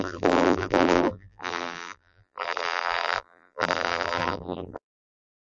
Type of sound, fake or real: fake